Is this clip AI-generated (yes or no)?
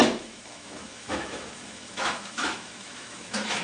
yes